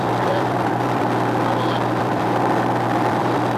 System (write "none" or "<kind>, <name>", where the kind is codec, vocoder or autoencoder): vocoder, BigVGAN v2